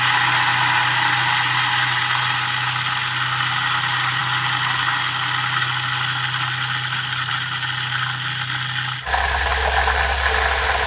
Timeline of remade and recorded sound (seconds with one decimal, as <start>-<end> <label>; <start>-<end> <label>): 0.0-10.9 recorded